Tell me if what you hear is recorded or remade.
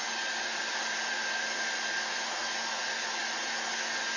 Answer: recorded